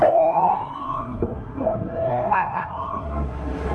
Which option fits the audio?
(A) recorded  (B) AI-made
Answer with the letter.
B